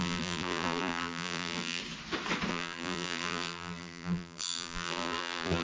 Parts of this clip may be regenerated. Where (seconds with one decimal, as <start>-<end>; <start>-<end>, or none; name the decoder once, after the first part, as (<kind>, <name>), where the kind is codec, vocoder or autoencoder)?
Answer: 0.0-1.8 (vocoder, BigVGAN v2); 2.5-5.6